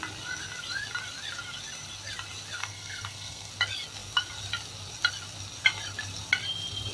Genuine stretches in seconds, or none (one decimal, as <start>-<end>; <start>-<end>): 0.0-2.6; 3.5-6.9